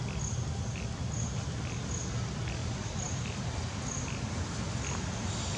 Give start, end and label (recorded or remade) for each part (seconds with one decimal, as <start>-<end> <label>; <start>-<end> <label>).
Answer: 0.0-2.6 recorded; 2.6-3.4 remade; 3.4-5.6 recorded